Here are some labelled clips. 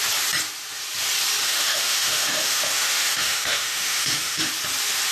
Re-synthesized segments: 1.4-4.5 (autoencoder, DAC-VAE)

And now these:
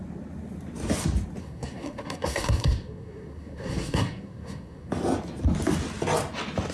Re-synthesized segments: 1.4-4.9 (codec, SNAC)

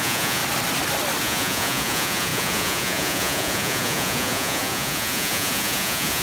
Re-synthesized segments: 0.0-0.4 (vocoder, Vocos); 1.2-6.2

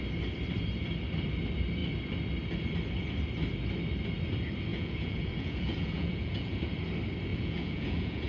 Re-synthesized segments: 4.7-6.7 (vocoder, Vocos); 7.3-8.3

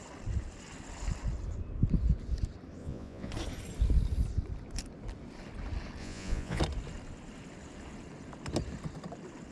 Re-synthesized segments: 2.8-3.3 (vocoder, Vocos); 6.0-6.6

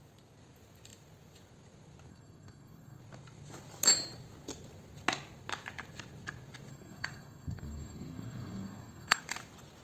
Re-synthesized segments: 2.1-3.0 (codec, SNAC); 6.7-9.2

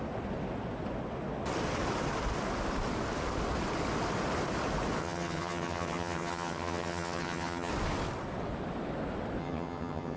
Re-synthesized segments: 5.0-7.7 (vocoder, HiFi-GAN); 9.4-10.2